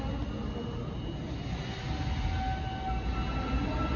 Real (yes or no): yes